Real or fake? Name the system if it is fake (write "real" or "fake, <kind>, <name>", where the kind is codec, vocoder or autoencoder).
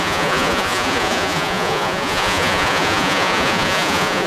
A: fake, vocoder, Vocos